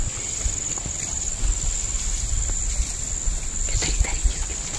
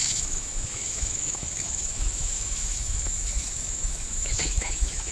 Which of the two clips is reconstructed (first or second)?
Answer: second